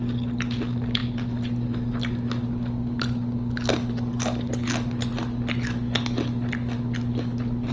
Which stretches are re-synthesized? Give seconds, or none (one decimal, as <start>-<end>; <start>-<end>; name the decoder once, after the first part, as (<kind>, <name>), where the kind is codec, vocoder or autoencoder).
none

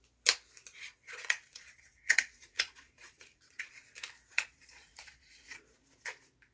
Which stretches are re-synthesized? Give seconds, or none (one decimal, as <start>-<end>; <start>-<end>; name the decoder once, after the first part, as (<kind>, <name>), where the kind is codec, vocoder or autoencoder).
0.7-3.7 (vocoder, Vocos); 4.3-5.6

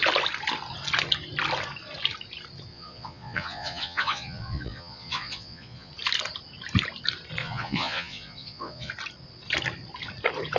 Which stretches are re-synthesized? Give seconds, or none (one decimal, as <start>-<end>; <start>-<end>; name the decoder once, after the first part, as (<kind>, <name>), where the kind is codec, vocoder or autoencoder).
2.7-5.9 (vocoder, Vocos); 7.4-8.9